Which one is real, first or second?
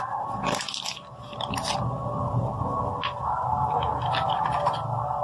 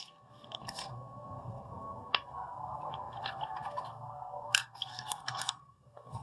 first